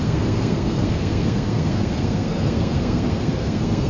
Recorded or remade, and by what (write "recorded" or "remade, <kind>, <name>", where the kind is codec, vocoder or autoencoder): remade, codec, SNAC